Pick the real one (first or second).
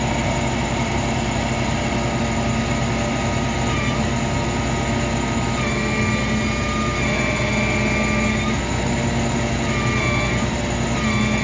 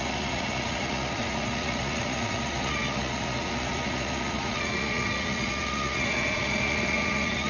first